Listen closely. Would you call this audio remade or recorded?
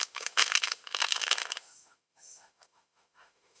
remade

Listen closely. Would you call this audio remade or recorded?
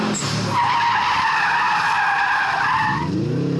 recorded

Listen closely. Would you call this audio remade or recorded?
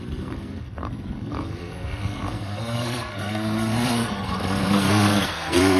remade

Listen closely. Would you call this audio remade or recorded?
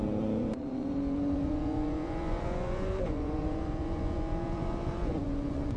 remade